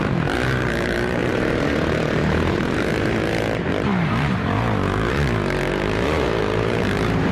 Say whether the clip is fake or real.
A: fake